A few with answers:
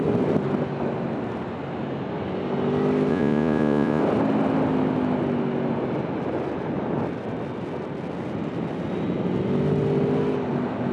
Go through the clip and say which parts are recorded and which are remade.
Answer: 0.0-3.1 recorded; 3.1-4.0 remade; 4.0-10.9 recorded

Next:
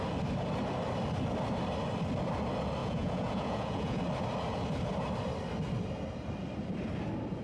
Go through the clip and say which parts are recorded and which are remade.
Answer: 0.0-2.8 recorded; 2.8-4.0 remade; 4.0-7.4 recorded

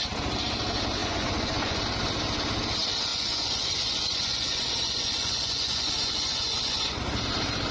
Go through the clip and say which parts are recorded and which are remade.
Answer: 0.0-1.0 recorded; 1.0-1.8 remade; 1.8-3.1 recorded; 3.1-7.0 remade; 7.0-7.7 recorded

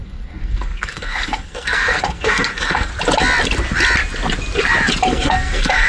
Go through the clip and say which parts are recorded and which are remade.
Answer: 0.0-2.9 remade; 2.9-5.1 recorded; 5.1-5.9 remade

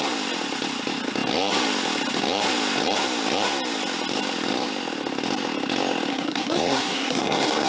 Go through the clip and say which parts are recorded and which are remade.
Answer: 0.0-6.1 recorded; 6.1-7.7 remade

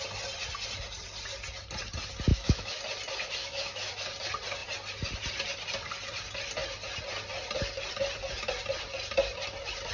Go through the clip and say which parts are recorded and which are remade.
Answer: 0.0-2.3 recorded; 2.3-2.8 remade; 2.8-3.4 recorded; 3.4-3.9 remade; 3.9-9.9 recorded

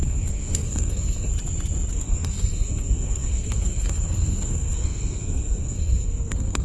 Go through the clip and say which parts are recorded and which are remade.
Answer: 0.0-1.3 remade; 1.3-1.9 recorded; 1.9-6.6 remade

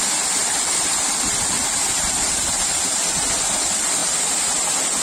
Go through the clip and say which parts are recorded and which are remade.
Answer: 0.0-5.0 recorded